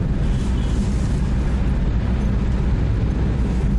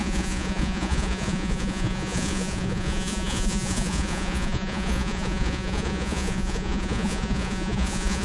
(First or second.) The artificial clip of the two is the second